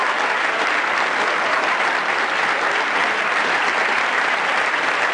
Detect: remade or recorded recorded